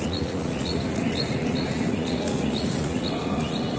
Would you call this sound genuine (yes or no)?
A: no